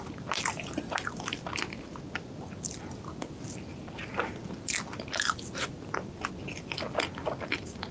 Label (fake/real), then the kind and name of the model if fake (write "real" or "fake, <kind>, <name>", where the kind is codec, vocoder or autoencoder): real